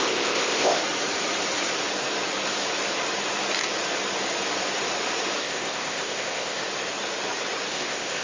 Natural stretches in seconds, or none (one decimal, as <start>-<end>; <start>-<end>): 0.8-5.4; 6.6-7.7